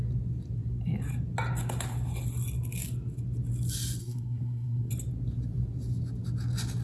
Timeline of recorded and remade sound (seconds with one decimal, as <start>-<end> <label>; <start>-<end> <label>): 0.0-4.0 recorded; 4.0-4.9 remade; 4.9-6.8 recorded